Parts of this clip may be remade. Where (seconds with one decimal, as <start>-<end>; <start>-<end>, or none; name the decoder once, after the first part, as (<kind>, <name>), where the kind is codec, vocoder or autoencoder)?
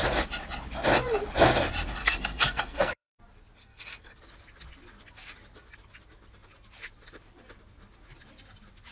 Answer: 2.0-3.2 (codec, SNAC); 3.6-4.2